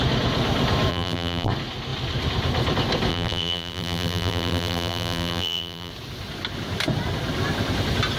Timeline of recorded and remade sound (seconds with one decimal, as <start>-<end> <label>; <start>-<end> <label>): 0.0-0.9 recorded; 0.9-1.5 remade; 1.5-3.1 recorded; 3.1-5.9 remade; 5.9-8.2 recorded